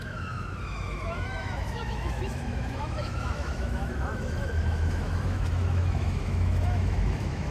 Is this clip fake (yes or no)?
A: yes